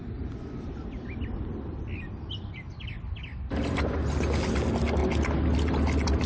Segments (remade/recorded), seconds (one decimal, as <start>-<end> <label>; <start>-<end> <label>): 0.0-6.3 recorded